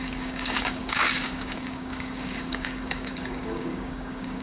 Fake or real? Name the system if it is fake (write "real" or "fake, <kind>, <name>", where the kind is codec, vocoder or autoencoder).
fake, codec, DAC